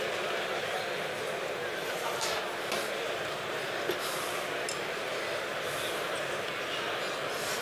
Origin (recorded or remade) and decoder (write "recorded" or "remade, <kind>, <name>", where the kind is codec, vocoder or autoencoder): recorded